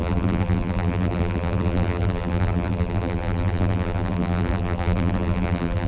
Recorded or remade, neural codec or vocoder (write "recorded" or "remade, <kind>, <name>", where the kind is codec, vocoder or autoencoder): remade, vocoder, BigVGAN v2